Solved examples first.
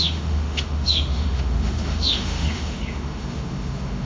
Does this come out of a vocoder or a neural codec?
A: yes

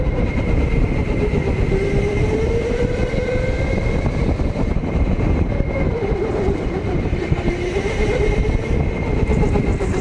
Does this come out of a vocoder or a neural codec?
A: yes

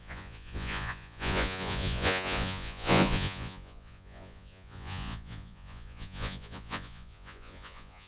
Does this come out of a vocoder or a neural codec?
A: yes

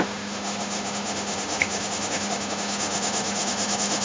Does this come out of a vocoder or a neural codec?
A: yes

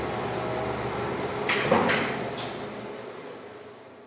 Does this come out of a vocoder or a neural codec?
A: no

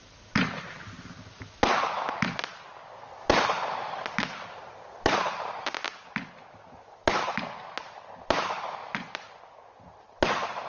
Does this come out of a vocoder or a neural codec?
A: no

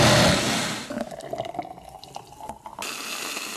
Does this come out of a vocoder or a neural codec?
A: no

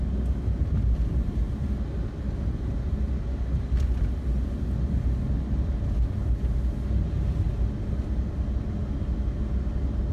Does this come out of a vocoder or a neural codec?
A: no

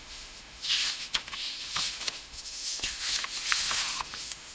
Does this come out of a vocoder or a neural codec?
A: yes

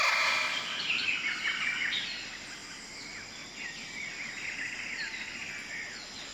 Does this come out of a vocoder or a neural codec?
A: no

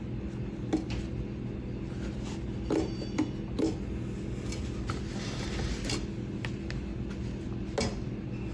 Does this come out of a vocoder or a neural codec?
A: no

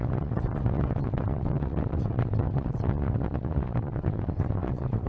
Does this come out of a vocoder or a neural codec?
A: yes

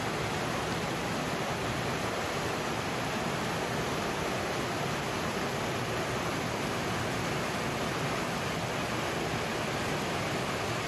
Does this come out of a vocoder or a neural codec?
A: no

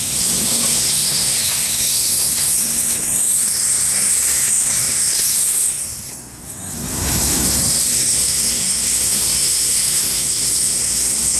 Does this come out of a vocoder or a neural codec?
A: yes